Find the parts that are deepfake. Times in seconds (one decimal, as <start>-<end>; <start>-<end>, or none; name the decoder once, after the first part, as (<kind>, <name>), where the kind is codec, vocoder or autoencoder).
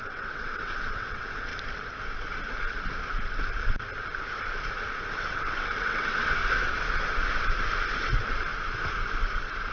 0.0-1.5 (vocoder, WaveNeXt); 5.2-6.4; 7.9-8.5